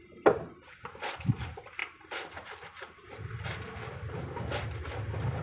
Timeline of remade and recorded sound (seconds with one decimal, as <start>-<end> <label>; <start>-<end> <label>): 0.0-5.4 recorded